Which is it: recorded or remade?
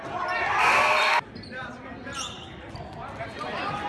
remade